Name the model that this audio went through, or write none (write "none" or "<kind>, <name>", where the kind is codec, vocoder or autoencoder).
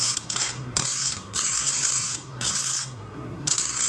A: codec, SNAC